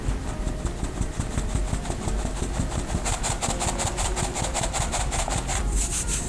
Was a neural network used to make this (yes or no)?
yes